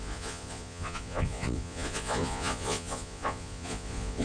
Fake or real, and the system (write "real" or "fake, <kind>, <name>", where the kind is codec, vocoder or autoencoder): fake, vocoder, Vocos